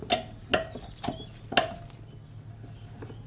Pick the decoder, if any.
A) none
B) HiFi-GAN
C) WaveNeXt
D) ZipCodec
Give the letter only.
A